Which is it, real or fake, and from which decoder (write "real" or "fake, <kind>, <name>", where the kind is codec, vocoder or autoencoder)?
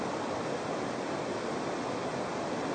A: real